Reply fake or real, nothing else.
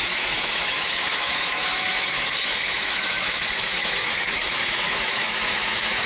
fake